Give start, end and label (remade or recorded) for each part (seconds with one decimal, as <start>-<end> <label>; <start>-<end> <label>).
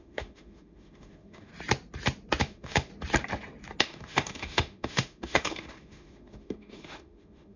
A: 0.0-1.5 remade; 1.5-2.4 recorded; 2.4-2.9 remade; 2.9-3.8 recorded; 3.8-7.6 remade